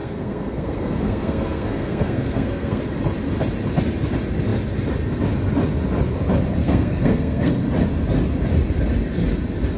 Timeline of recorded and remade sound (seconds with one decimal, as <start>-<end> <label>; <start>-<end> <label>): 0.0-2.8 remade; 2.8-6.6 recorded; 6.6-7.5 remade; 7.5-9.8 recorded